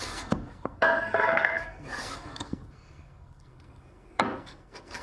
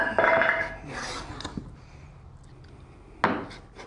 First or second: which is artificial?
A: first